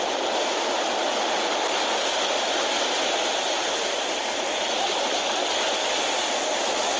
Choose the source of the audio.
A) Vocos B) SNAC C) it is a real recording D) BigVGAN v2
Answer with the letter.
C